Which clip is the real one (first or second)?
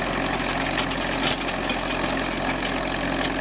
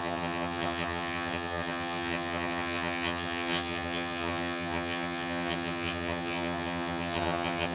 first